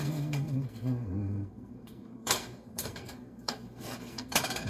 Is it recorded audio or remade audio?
remade